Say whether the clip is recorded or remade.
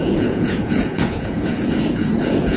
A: remade